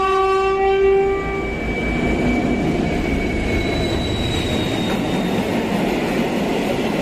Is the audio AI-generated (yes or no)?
no